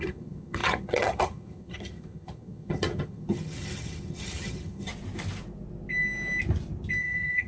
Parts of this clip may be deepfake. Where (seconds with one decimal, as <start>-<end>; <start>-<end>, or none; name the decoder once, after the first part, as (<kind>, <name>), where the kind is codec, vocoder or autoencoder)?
0.0-4.9 (vocoder, HiFi-GAN); 7.0-7.5